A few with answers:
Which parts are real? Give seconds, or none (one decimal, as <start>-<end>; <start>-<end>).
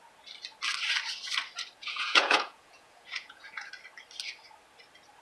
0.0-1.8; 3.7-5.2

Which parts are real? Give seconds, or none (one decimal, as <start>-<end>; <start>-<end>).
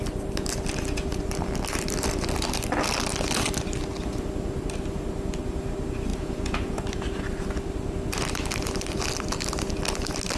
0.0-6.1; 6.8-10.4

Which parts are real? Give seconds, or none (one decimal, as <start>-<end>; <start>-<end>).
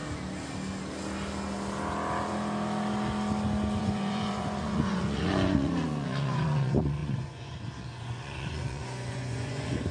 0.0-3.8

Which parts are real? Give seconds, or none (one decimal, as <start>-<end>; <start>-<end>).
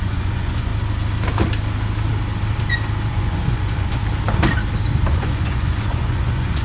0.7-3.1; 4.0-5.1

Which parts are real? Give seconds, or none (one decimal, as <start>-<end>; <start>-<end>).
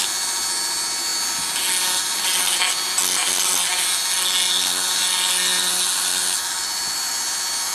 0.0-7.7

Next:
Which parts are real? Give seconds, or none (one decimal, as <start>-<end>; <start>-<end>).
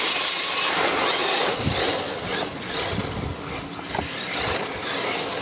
0.0-5.4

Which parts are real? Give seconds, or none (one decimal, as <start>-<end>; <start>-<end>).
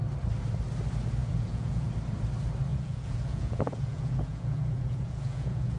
0.0-1.2; 1.9-2.7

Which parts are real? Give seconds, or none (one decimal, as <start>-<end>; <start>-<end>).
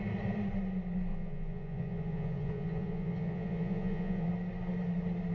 0.0-1.1; 4.3-5.3